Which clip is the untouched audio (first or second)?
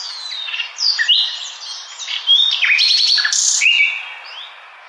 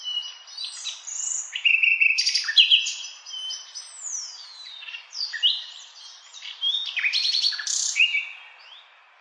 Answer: first